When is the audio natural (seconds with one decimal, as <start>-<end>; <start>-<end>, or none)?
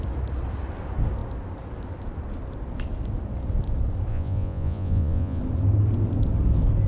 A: 0.0-4.1; 5.4-6.9